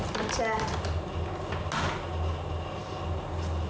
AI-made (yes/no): no